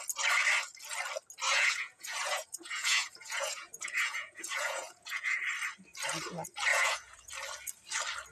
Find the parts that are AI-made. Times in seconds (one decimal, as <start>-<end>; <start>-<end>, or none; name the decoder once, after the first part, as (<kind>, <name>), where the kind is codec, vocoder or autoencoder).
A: 1.5-5.4 (vocoder, Vocos); 6.7-7.3